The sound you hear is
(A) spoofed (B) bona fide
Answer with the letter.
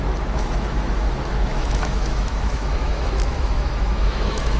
A